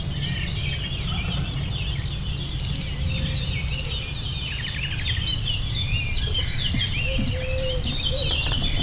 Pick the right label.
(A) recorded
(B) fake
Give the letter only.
A